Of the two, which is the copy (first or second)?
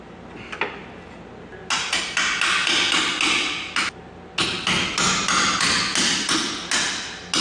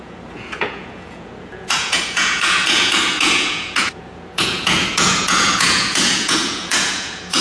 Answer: second